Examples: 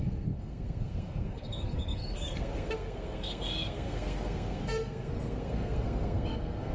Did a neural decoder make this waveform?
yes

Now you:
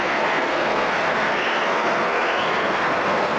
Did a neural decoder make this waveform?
yes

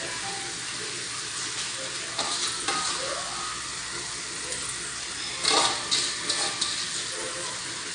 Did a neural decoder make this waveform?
no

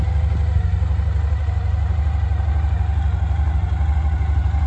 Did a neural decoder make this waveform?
no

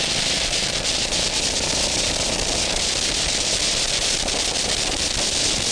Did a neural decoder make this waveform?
no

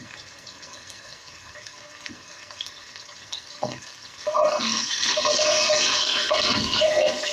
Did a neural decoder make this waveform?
yes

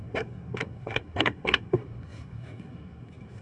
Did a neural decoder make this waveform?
yes